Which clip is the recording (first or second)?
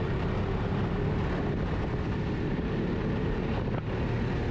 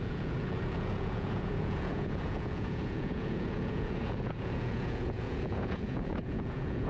first